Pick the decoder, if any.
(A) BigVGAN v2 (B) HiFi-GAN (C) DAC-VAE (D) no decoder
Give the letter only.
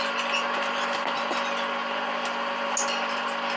D